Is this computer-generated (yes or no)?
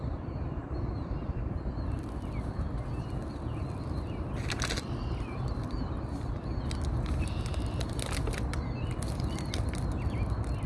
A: no